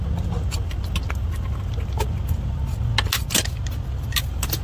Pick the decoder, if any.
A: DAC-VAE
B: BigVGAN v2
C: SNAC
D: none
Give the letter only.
D